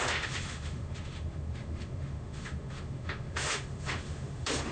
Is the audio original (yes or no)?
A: no